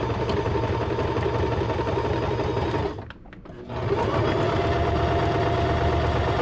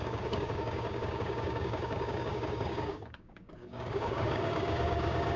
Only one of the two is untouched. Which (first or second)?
first